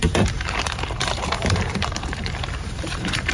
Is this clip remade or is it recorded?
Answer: remade